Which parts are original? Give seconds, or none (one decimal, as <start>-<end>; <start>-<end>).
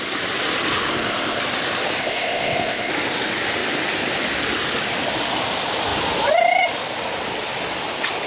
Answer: 0.0-0.9; 1.4-2.0; 2.9-8.3